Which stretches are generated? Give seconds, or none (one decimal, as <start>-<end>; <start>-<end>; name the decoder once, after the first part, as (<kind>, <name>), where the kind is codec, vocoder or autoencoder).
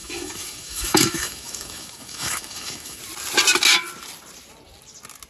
0.0-3.0 (autoencoder, DAC-VAE)